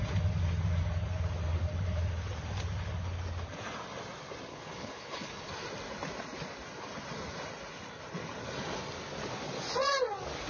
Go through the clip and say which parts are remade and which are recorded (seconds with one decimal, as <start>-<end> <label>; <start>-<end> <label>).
0.0-4.5 recorded; 4.5-5.5 remade; 5.5-10.5 recorded